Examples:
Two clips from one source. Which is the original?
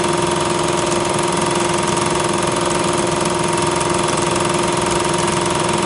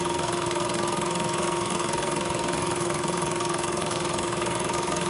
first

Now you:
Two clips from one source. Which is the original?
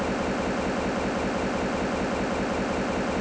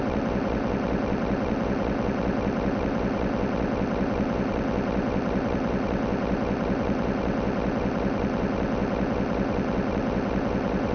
first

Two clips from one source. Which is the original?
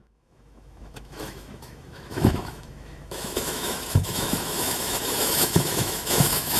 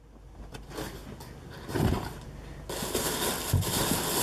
second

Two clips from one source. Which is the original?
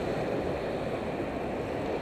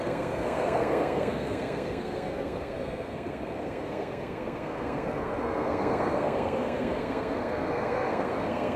first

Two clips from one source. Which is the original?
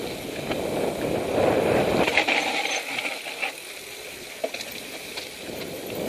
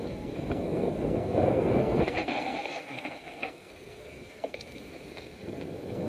first